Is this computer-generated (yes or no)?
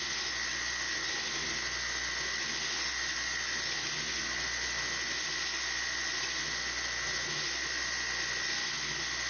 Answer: no